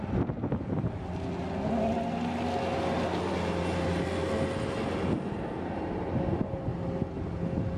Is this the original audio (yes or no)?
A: yes